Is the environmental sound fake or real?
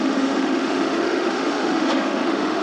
fake